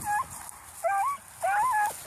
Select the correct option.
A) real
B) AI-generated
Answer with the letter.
A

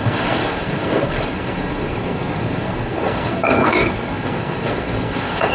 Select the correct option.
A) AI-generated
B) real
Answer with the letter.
A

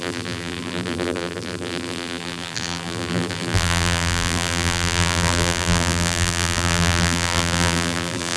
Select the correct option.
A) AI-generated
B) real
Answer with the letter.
A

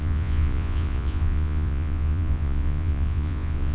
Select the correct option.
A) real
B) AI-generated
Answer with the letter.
B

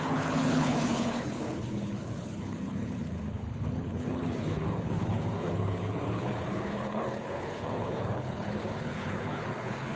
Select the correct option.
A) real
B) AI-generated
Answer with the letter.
B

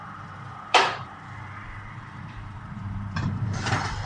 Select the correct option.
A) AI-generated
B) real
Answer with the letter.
A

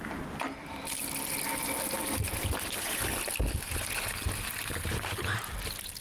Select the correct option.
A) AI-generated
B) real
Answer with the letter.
B